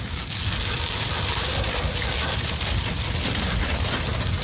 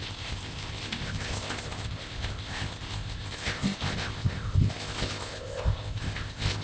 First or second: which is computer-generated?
second